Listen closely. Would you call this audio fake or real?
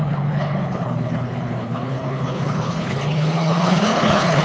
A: fake